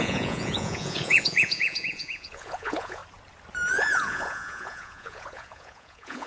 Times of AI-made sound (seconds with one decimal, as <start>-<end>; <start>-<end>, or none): 0.0-3.0; 3.7-6.3